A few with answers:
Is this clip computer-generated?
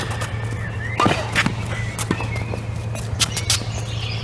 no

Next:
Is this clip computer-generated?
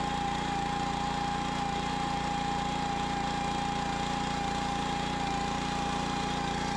no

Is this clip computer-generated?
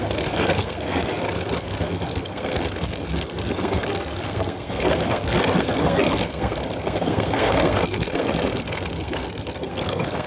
yes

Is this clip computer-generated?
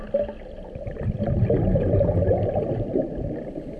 no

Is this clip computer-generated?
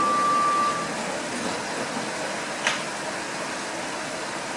no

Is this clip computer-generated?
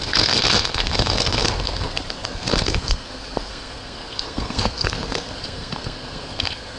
yes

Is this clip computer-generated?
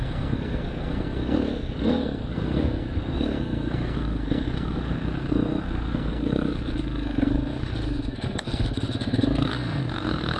yes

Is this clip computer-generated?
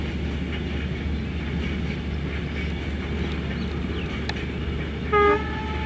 no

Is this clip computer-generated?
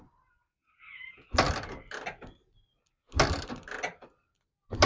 no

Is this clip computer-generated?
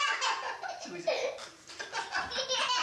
no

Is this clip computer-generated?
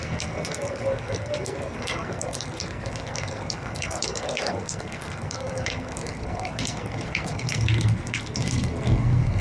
yes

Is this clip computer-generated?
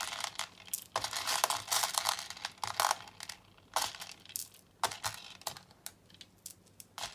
no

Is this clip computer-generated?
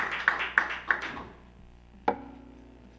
no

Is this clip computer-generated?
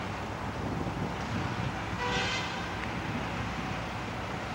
no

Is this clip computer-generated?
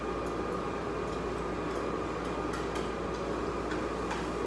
no